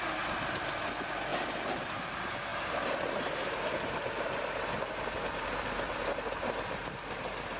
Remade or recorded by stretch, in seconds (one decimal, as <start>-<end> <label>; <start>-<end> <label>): 0.0-7.6 recorded